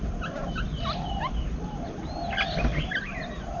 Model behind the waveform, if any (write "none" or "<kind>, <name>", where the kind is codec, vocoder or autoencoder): none